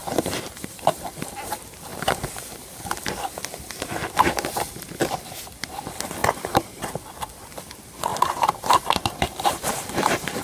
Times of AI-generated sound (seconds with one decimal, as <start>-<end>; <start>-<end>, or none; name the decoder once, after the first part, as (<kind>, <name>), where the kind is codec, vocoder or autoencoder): 0.0-1.5 (vocoder, BigVGAN v2); 6.2-6.8; 8.1-10.4